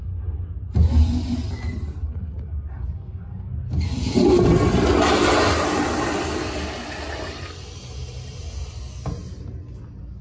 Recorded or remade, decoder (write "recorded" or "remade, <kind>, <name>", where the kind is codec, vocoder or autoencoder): recorded